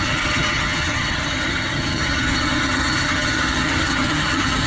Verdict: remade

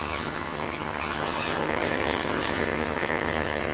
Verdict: remade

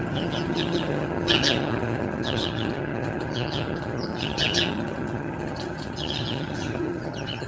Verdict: remade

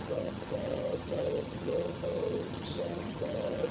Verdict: remade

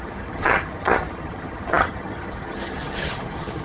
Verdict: remade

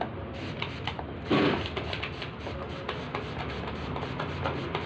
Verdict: recorded